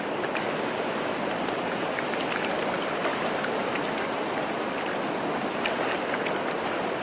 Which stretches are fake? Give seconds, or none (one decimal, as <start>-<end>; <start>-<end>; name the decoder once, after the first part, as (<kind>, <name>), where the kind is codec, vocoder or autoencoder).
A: none